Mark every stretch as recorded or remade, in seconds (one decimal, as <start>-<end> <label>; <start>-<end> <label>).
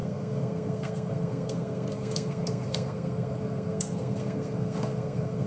0.0-5.5 remade